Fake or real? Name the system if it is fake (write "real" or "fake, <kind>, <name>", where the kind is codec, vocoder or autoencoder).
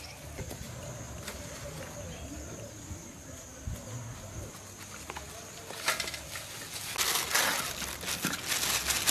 real